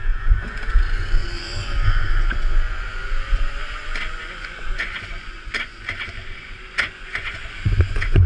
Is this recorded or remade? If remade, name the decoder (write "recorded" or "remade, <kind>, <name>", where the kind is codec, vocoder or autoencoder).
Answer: remade, vocoder, Vocos